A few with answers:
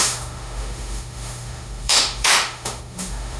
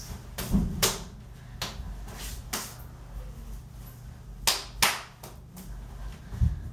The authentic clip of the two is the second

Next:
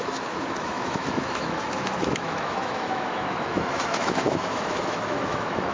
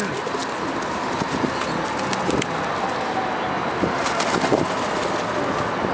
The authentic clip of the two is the second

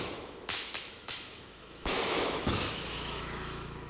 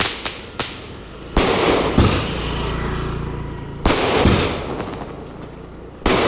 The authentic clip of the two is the second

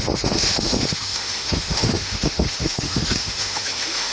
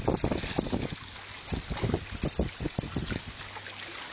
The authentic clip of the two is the second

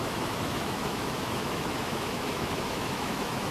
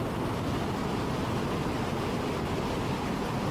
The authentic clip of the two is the second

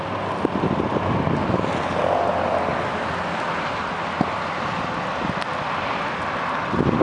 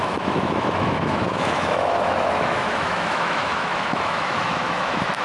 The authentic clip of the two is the first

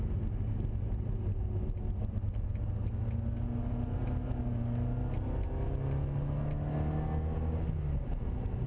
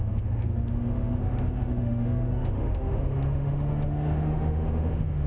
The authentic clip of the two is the first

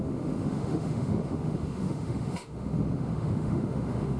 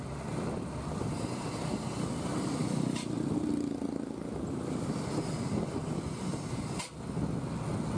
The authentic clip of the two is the second